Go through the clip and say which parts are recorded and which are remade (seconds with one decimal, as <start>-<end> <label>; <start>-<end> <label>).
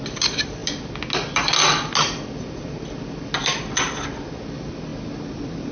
0.0-5.7 recorded